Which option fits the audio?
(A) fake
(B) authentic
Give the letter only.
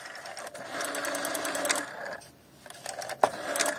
B